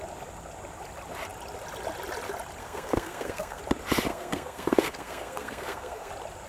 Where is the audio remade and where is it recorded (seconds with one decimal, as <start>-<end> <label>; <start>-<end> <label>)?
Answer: 0.0-2.6 recorded; 2.6-3.6 remade; 3.6-4.1 recorded; 4.1-6.1 remade; 6.1-6.5 recorded